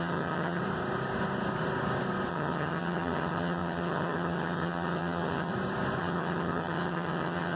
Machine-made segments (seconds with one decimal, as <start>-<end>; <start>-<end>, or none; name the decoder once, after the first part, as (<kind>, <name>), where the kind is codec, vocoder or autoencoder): 0.0-0.6 (vocoder, HiFi-GAN); 2.3-5.5; 6.0-7.6